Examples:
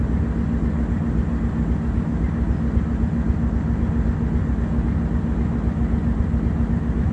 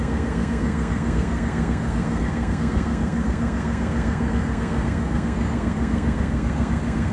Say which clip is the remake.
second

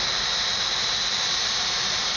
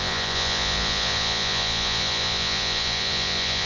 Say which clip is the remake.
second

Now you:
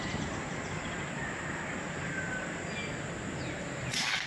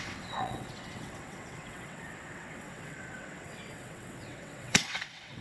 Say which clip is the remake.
second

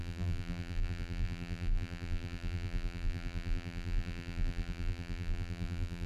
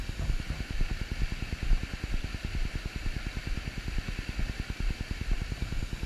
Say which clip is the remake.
first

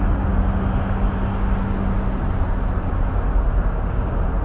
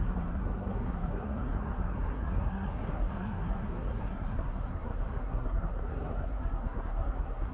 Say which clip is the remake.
second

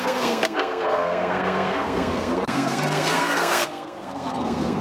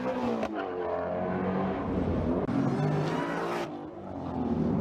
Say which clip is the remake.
first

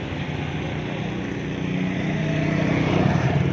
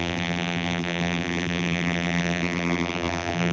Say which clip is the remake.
second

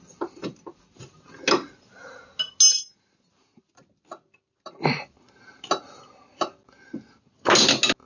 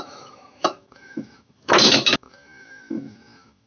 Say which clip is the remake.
second